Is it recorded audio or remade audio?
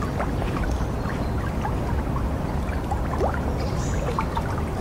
recorded